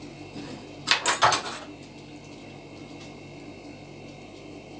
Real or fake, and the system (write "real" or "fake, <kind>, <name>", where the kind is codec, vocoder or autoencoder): real